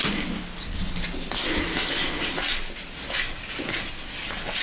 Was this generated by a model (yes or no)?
no